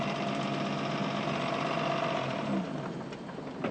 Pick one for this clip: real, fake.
real